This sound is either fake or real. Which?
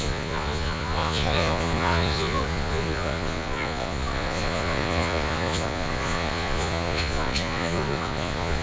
fake